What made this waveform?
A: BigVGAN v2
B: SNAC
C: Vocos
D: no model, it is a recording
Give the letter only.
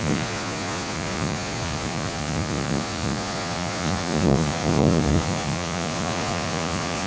C